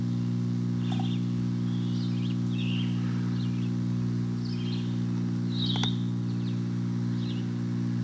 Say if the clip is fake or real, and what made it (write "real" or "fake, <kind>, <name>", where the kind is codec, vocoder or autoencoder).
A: real